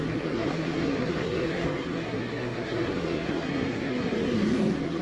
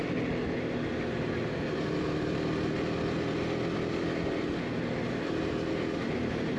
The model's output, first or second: first